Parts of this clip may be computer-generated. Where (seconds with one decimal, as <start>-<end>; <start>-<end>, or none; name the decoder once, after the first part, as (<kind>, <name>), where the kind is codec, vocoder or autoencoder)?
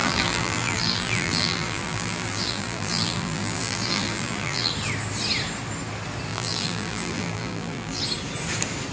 0.0-4.7 (vocoder, BigVGAN v2); 6.3-8.0